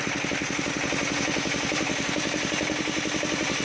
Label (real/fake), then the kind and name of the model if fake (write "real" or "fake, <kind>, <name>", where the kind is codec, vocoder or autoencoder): real